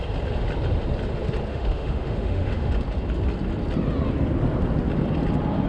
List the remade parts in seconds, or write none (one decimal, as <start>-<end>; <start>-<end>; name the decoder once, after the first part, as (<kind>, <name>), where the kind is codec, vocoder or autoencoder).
1.5-2.7 (autoencoder, DAC-VAE)